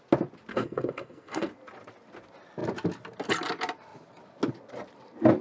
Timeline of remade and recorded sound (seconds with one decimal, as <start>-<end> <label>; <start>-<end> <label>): 0.0-0.5 recorded; 0.5-1.5 remade; 1.5-5.4 recorded